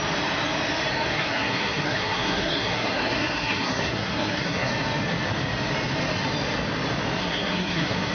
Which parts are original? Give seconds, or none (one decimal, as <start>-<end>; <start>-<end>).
0.0-1.1; 4.7-7.2